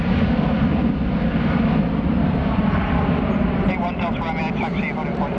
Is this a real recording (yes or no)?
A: yes